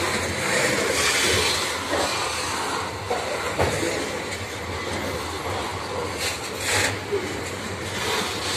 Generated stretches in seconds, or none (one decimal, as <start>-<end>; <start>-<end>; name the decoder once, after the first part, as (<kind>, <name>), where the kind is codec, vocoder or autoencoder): none